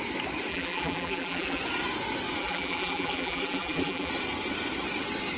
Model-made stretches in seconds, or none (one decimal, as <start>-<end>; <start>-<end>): 0.5-1.6; 2.4-4.1